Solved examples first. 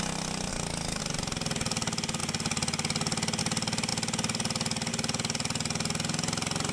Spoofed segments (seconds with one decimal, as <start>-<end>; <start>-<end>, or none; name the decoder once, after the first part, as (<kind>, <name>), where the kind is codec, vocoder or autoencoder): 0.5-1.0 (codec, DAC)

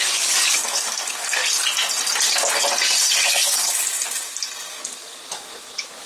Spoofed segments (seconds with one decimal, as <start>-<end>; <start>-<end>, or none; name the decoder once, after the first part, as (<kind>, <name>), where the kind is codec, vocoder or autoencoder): 0.0-1.4 (codec, DAC); 3.3-3.9; 4.7-6.1

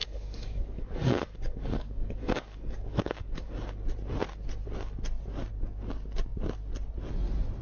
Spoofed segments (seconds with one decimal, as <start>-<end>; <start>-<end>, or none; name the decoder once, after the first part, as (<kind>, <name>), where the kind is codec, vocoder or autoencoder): 0.0-3.5 (codec, DAC)